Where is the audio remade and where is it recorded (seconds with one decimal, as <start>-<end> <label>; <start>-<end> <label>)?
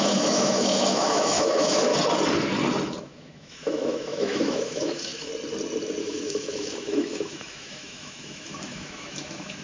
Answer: 0.0-1.9 remade; 1.9-3.0 recorded; 3.0-5.3 remade; 5.3-6.0 recorded; 6.0-9.6 remade